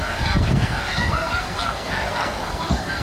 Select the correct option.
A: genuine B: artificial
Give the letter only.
B